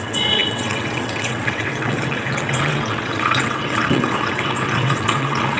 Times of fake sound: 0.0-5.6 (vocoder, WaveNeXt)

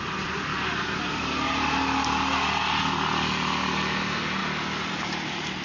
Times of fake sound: none

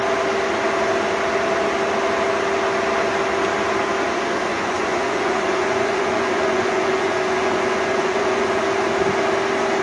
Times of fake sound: 4.5-8.6 (vocoder, Vocos)

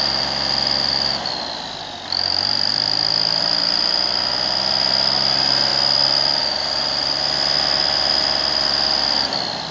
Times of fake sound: none

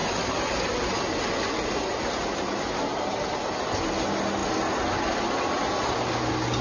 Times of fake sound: none

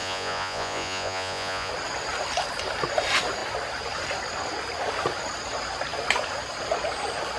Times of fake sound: 0.0-1.7 (vocoder, Vocos)

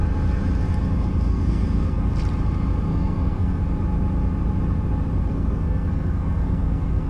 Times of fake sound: 1.3-2.1 (codec, SNAC); 2.9-3.6; 5.2-7.1

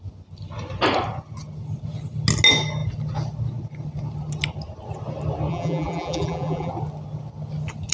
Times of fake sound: 5.5-6.7 (vocoder, BigVGAN v2)